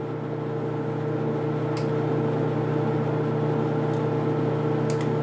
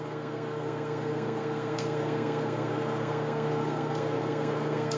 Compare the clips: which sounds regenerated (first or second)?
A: second